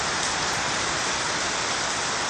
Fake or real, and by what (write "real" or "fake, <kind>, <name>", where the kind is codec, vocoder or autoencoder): real